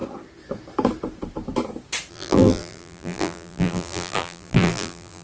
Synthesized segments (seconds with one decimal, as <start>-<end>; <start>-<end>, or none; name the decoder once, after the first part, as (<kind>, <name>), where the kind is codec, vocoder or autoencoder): 2.1-5.2 (vocoder, BigVGAN v2)